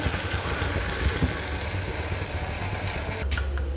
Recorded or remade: recorded